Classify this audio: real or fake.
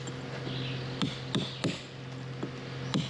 real